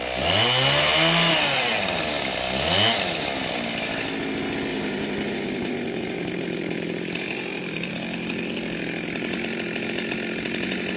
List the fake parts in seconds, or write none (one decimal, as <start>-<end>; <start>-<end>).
4.7-7.9